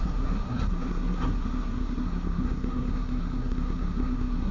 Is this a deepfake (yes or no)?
yes